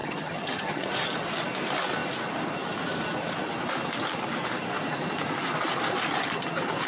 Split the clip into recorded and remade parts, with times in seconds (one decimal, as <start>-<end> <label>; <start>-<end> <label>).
0.0-0.9 remade; 0.9-6.9 recorded